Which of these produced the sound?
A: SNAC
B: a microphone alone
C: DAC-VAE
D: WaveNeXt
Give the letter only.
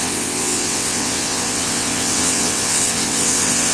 D